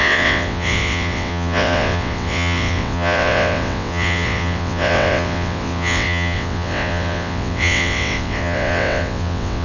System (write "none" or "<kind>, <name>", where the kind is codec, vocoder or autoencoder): vocoder, WaveNeXt